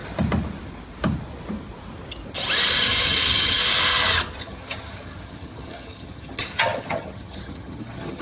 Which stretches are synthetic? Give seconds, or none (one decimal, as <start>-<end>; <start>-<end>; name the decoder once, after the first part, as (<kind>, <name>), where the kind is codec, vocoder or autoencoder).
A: 2.8-3.6 (vocoder, HiFi-GAN); 4.4-8.2